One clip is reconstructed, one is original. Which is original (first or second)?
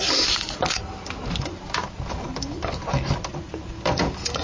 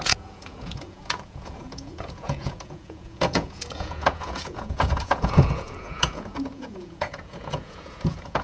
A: first